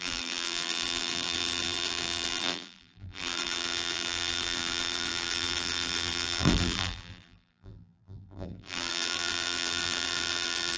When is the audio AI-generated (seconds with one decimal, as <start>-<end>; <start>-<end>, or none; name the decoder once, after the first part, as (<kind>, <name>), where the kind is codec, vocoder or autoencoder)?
0.0-10.8 (vocoder, BigVGAN v2)